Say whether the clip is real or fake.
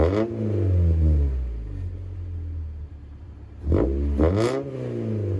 real